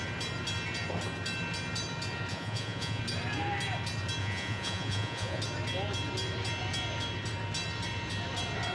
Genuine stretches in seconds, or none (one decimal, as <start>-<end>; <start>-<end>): 0.0-2.3; 3.0-4.2; 5.4-8.7

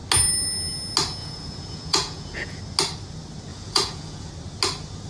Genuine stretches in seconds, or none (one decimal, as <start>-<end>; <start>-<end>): 0.0-1.2; 2.6-3.5; 4.3-5.1